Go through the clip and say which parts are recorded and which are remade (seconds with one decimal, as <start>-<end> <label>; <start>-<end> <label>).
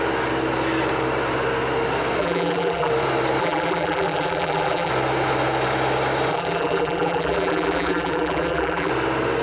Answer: 0.0-2.2 recorded; 2.2-2.9 remade; 2.9-3.4 recorded; 3.4-4.9 remade; 4.9-6.3 recorded; 6.3-8.9 remade; 8.9-9.4 recorded